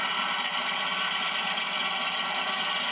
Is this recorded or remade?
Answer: recorded